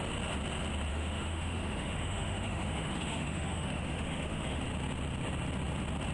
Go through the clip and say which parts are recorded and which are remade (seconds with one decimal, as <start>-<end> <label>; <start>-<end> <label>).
0.0-0.9 recorded; 0.9-4.6 remade; 4.6-6.1 recorded